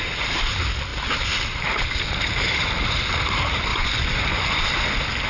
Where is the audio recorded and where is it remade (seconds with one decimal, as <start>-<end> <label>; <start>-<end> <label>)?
0.0-3.7 recorded; 3.7-4.6 remade; 4.6-5.3 recorded